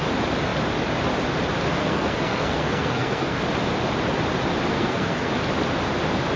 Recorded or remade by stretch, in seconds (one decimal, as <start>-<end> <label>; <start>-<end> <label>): 0.0-1.8 recorded; 1.8-3.4 remade; 3.4-4.7 recorded; 4.7-5.3 remade; 5.3-6.4 recorded